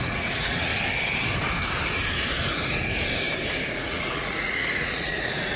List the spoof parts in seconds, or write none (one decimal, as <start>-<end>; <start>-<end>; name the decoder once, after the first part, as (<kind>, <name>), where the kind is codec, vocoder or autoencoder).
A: 0.0-0.7 (vocoder, Vocos); 3.7-5.6